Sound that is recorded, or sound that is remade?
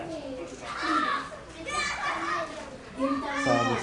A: recorded